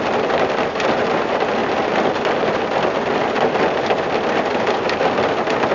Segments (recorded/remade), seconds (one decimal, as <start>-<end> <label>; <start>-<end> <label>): 0.0-5.7 recorded